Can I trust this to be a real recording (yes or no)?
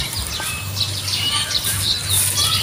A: yes